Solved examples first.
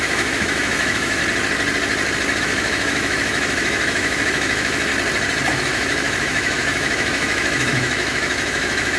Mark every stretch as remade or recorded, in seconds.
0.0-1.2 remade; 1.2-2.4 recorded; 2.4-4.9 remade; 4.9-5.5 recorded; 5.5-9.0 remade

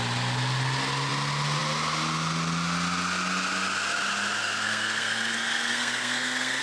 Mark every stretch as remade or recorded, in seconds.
0.0-4.4 recorded; 4.4-6.6 remade

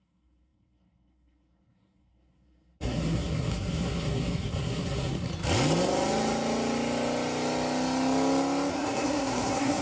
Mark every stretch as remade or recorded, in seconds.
0.0-5.3 remade; 5.3-8.7 recorded; 8.7-9.8 remade